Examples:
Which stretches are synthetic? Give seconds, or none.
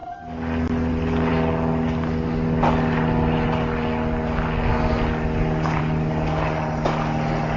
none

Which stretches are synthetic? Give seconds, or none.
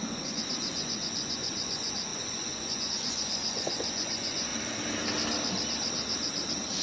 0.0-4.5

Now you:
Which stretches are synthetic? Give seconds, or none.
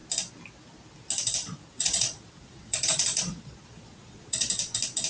1.4-4.5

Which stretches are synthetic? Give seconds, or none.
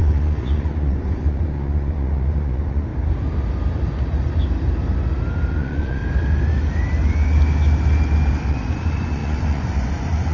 0.0-2.9; 5.5-6.0; 8.5-10.3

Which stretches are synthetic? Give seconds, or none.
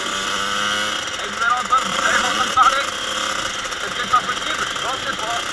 1.9-2.4